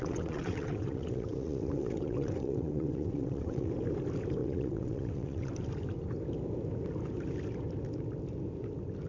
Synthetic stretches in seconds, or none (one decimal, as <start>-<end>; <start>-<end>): 0.0-3.7; 4.4-5.5